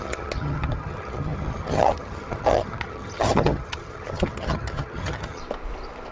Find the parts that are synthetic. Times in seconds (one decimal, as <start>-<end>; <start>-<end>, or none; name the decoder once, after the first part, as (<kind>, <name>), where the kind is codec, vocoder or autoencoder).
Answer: 0.0-5.4 (vocoder, HiFi-GAN)